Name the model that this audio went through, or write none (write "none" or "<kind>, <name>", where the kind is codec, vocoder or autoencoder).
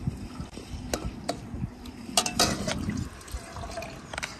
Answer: none